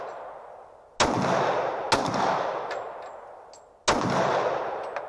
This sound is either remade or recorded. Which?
recorded